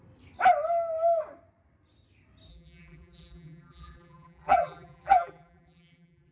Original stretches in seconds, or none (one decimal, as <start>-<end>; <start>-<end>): 0.0-2.5